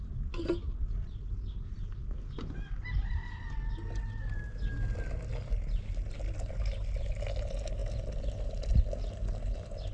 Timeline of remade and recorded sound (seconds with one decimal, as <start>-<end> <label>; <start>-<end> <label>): 0.0-9.9 recorded